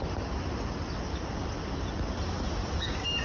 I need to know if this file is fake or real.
real